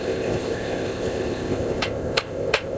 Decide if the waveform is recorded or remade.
remade